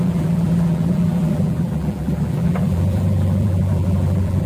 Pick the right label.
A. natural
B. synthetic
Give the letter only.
B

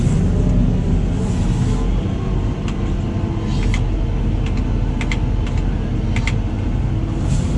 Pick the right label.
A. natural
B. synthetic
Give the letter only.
A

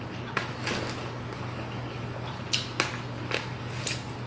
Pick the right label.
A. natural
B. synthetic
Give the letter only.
A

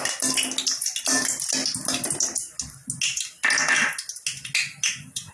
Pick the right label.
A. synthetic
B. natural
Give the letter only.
B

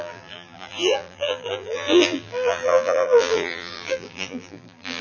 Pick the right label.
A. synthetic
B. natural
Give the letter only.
A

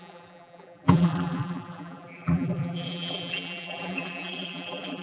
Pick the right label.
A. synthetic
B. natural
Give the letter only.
A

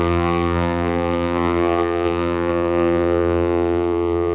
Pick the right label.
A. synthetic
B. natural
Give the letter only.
A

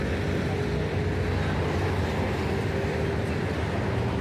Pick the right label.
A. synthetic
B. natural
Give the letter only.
B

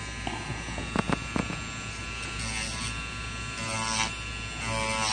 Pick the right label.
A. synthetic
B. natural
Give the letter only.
B